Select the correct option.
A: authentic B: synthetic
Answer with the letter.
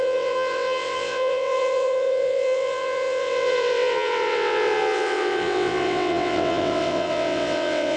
B